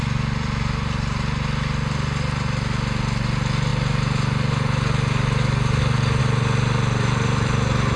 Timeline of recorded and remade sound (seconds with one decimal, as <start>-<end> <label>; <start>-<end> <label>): 0.0-8.0 recorded